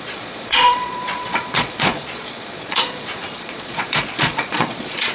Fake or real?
fake